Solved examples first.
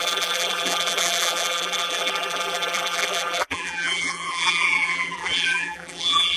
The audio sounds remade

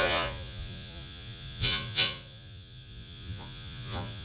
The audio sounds remade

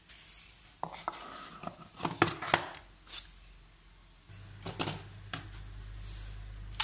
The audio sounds recorded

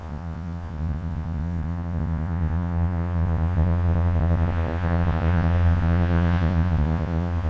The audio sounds remade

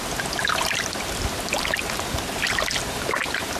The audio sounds recorded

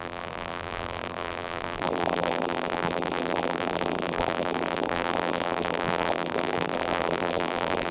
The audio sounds remade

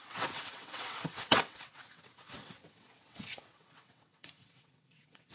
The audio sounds remade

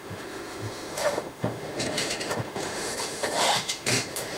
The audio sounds remade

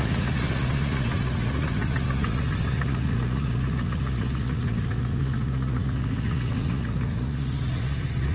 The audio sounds remade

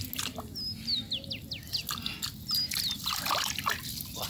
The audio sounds recorded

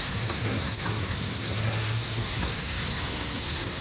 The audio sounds remade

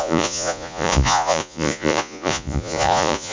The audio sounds remade